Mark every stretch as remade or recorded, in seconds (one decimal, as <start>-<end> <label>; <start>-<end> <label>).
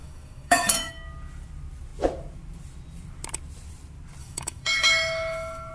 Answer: 0.0-0.9 remade; 0.9-4.2 recorded; 4.2-5.7 remade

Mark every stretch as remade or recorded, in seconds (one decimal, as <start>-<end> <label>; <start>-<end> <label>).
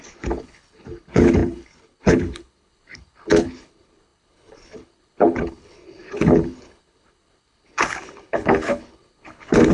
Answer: 0.0-9.7 remade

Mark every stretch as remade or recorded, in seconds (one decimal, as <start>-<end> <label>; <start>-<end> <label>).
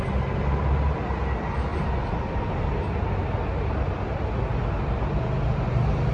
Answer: 0.0-6.1 recorded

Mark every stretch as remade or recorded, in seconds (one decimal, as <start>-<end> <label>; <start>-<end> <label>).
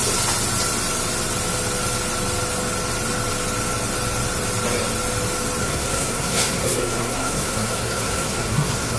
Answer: 0.0-5.6 recorded; 5.6-9.0 remade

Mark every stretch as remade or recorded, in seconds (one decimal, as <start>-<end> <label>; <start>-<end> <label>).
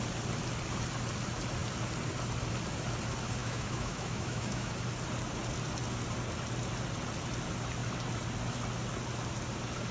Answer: 0.0-3.4 recorded; 3.4-4.7 remade; 4.7-9.9 recorded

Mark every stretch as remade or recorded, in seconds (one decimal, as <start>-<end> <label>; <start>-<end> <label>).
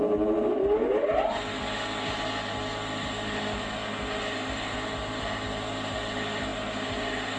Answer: 0.0-7.4 recorded